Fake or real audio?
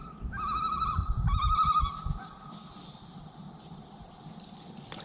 fake